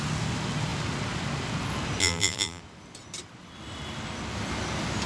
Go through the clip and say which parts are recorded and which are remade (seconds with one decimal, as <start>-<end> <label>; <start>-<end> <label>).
0.0-2.0 recorded; 2.0-2.6 remade; 2.6-5.1 recorded